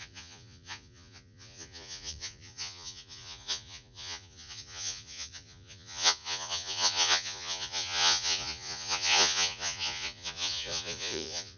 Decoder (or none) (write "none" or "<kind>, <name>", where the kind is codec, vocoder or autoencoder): vocoder, Vocos